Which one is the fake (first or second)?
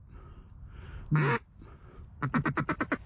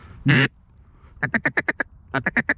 second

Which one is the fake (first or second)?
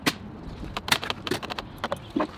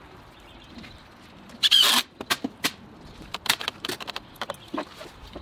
second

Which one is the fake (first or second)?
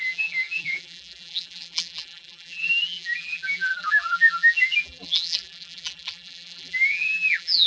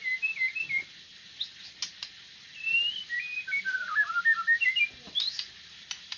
first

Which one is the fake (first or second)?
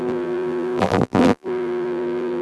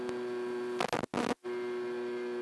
first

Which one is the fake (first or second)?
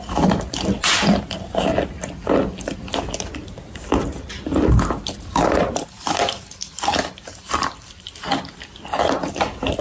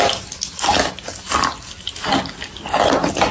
first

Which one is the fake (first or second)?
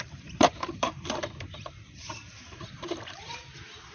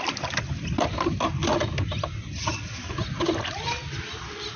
first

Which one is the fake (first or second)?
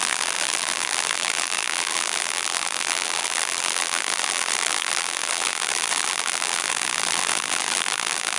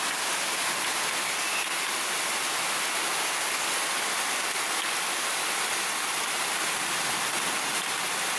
first